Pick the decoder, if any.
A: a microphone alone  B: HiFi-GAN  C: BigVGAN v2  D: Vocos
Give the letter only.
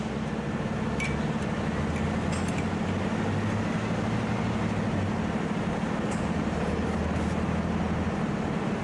A